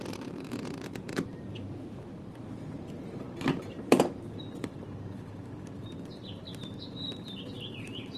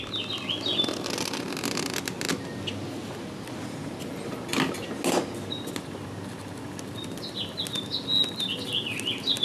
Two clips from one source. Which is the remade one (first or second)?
first